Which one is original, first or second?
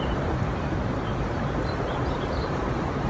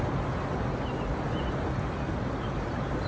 second